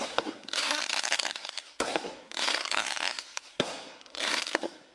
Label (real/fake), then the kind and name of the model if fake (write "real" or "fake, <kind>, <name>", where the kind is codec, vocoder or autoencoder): fake, codec, SNAC